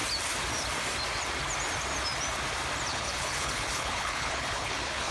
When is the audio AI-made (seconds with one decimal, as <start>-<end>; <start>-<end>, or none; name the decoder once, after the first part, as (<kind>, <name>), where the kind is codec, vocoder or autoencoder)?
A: 2.9-5.1 (codec, HILCodec)